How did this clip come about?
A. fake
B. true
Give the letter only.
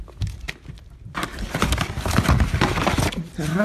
B